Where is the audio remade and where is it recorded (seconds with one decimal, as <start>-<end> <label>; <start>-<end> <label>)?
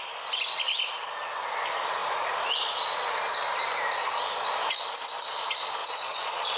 0.0-5.8 recorded; 5.8-6.6 remade